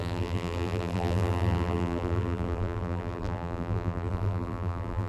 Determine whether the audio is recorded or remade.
remade